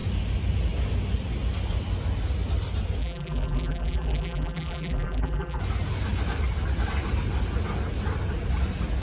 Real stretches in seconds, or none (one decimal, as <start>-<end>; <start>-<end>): 0.0-3.0; 5.6-9.0